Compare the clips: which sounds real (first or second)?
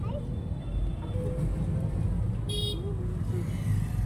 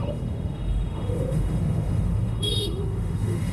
first